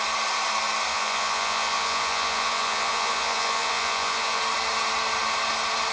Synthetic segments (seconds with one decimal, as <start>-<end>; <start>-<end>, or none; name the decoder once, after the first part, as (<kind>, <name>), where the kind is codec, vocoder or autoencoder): 0.9-4.4 (vocoder, Vocos)